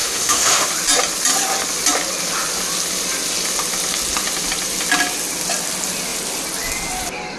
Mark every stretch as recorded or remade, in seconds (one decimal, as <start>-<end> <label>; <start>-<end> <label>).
0.0-0.7 remade; 0.7-7.4 recorded